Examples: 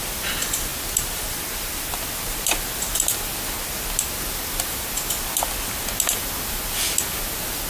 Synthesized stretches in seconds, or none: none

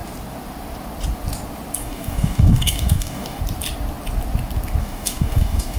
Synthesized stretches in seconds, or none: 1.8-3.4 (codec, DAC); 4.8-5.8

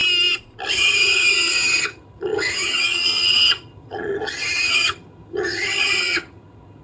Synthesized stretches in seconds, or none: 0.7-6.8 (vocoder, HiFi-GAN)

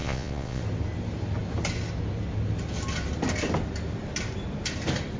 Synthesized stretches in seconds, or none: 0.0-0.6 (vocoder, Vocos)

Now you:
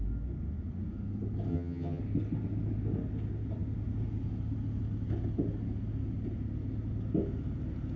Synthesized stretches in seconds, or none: 1.5-2.0 (vocoder, HiFi-GAN)